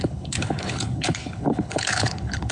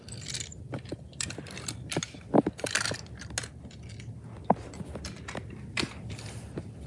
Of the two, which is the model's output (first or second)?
first